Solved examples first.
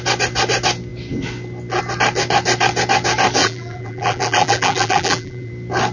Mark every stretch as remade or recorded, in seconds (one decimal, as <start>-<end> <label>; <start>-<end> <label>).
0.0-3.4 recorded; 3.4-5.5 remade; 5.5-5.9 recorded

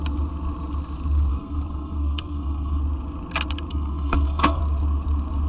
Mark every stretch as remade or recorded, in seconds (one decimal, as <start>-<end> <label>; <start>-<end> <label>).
0.0-1.3 recorded; 1.3-2.8 remade; 2.8-3.7 recorded; 3.7-4.6 remade; 4.6-5.5 recorded

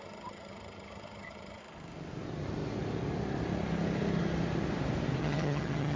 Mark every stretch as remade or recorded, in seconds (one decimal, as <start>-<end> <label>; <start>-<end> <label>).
0.0-1.6 remade; 1.6-5.2 recorded; 5.2-6.0 remade